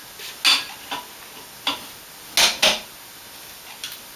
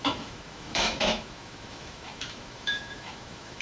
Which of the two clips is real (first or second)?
first